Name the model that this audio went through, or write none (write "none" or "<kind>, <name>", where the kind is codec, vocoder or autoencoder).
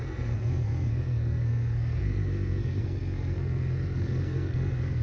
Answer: codec, SNAC